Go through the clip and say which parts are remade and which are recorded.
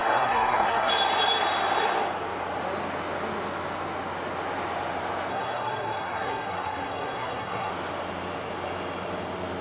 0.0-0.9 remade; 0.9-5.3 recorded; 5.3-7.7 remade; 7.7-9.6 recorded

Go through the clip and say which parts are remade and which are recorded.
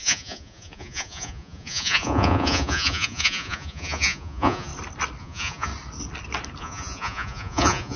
0.0-4.7 remade; 4.7-5.2 recorded; 5.2-5.7 remade; 5.7-6.6 recorded; 6.6-8.0 remade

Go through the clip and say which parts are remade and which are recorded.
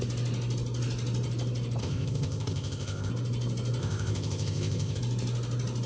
0.0-1.8 recorded; 1.8-3.1 remade; 3.1-3.8 recorded; 3.8-5.0 remade; 5.0-5.9 recorded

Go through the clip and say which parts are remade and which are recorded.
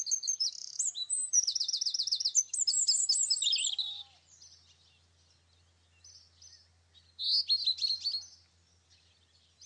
0.0-0.6 recorded; 0.6-2.4 remade; 2.4-9.7 recorded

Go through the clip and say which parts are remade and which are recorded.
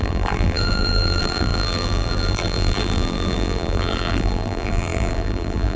0.0-5.8 remade